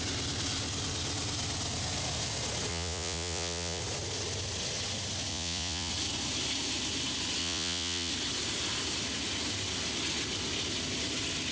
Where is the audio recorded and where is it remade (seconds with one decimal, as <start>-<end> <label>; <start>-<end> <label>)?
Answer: 0.0-2.7 recorded; 2.7-3.8 remade; 3.8-5.3 recorded; 5.3-5.9 remade; 5.9-7.4 recorded; 7.4-8.1 remade; 8.1-11.5 recorded

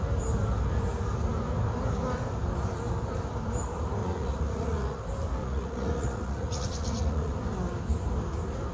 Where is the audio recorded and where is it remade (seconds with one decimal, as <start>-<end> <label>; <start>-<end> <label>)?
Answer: 0.0-4.0 recorded; 4.0-5.0 remade; 5.0-5.4 recorded; 5.4-7.3 remade; 7.3-8.7 recorded

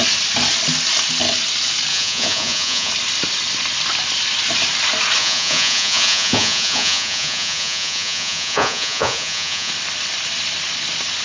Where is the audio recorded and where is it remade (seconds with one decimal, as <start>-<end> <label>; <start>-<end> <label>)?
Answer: 0.0-1.9 recorded; 1.9-2.9 remade; 2.9-5.2 recorded; 5.2-9.7 remade; 9.7-11.2 recorded

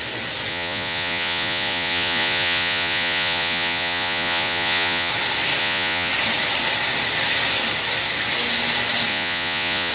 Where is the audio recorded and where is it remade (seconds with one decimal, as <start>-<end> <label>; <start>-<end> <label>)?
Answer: 0.0-0.5 recorded; 0.5-5.1 remade; 5.1-5.6 recorded; 5.6-6.1 remade; 6.1-9.1 recorded; 9.1-9.9 remade